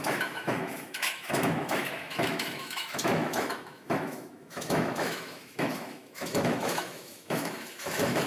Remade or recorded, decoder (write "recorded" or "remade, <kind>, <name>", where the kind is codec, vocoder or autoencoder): remade, autoencoder, DAC-VAE